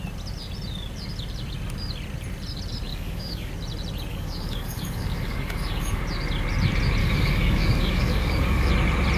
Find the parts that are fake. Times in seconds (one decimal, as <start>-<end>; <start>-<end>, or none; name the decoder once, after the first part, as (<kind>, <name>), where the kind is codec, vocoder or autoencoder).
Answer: 2.9-3.5 (codec, DAC); 4.1-6.0; 7.0-8.7